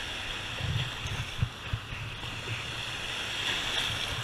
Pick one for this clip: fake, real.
real